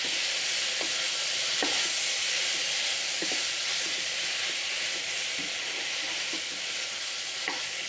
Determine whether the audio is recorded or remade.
recorded